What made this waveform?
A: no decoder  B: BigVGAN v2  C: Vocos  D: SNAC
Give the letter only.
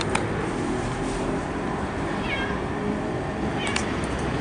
B